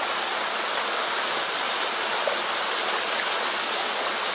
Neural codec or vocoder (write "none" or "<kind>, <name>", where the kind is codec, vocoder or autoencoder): none